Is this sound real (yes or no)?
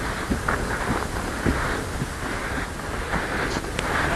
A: yes